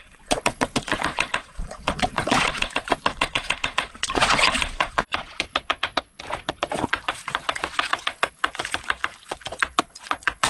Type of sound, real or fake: fake